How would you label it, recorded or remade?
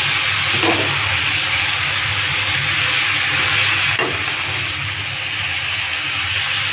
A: recorded